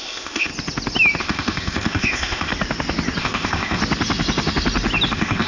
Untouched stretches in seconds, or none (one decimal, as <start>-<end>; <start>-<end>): 0.5-1.2; 2.5-3.2; 3.8-5.1